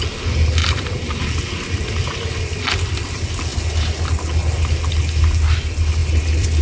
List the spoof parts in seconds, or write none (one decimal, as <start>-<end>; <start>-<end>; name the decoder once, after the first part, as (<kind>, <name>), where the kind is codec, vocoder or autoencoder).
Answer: 0.6-1.2 (vocoder, BigVGAN v2); 6.0-6.6